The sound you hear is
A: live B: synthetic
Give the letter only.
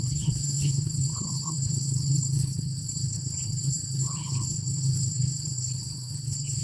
B